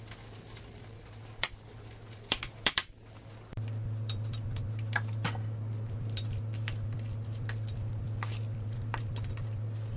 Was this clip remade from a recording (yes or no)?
yes